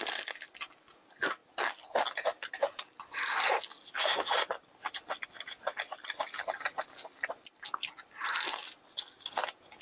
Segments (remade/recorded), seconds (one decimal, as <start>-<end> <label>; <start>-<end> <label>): 0.0-9.8 recorded